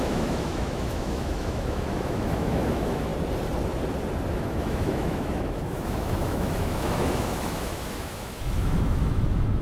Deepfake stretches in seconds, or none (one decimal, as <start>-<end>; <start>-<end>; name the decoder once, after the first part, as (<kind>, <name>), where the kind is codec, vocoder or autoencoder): 0.0-3.1 (autoencoder, DAC-VAE); 4.3-9.6